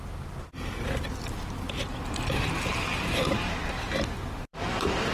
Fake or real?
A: fake